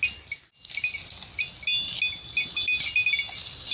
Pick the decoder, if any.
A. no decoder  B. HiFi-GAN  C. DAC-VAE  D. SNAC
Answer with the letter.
A